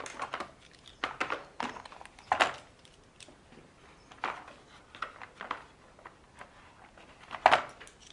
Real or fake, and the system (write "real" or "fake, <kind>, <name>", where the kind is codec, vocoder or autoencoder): real